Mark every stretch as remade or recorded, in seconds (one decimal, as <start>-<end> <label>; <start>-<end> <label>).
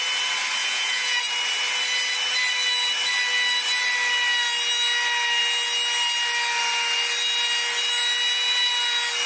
0.0-0.6 recorded; 0.6-1.2 remade; 1.2-9.3 recorded